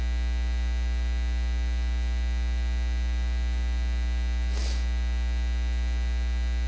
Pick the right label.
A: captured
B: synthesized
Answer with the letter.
A